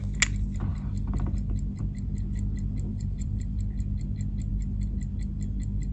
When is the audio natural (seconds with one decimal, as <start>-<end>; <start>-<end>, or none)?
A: 0.0-2.9; 3.6-5.9